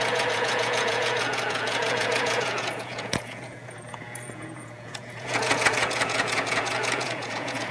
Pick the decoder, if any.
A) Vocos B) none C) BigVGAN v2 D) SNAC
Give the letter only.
A